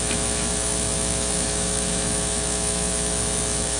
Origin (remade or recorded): remade